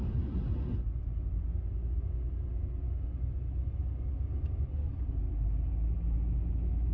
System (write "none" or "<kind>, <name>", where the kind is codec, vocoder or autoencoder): none